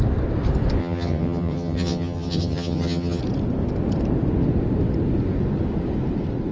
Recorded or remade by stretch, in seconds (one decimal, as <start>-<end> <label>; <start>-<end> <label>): 0.0-0.8 recorded; 0.8-3.2 remade; 3.2-6.5 recorded